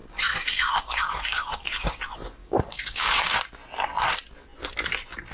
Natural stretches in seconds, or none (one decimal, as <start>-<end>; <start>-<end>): 2.0-2.4; 3.3-5.3